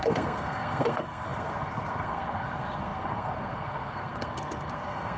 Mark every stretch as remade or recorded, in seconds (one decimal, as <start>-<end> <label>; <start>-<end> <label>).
0.0-5.2 remade